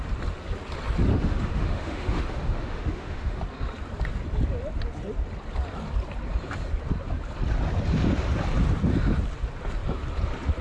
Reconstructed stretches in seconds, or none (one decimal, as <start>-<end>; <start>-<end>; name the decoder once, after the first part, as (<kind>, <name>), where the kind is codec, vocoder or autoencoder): 1.1-3.4 (autoencoder, DAC-VAE)